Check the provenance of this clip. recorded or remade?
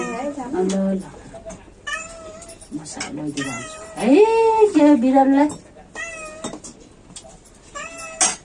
recorded